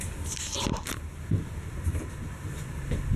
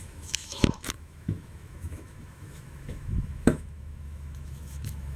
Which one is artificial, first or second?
second